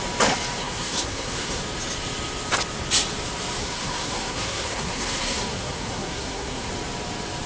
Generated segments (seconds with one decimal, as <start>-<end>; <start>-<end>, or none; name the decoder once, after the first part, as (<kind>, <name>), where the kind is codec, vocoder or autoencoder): 0.6-1.6 (codec, SNAC); 3.6-6.7